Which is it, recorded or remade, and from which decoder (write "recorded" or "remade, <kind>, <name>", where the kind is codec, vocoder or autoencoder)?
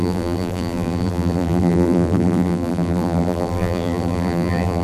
remade, vocoder, BigVGAN v2